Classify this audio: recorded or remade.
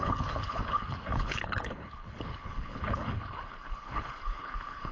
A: remade